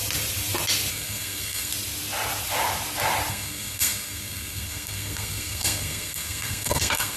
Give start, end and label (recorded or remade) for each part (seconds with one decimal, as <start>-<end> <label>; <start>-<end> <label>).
0.0-0.9 recorded; 0.9-1.7 remade; 1.7-3.3 recorded; 3.3-7.2 remade